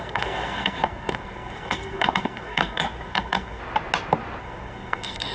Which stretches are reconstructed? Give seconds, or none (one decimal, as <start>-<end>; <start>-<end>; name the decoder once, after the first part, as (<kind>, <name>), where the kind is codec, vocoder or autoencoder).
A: 0.0-3.6 (codec, SNAC); 4.4-5.3